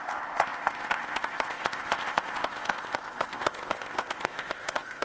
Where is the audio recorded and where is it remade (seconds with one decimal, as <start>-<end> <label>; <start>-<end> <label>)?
0.0-5.0 remade